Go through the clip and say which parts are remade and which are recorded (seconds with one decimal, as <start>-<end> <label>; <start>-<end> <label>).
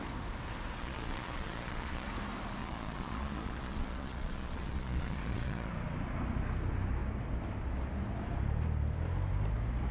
0.0-0.8 recorded; 0.8-2.1 remade; 2.1-2.6 recorded; 2.6-5.7 remade; 5.7-9.9 recorded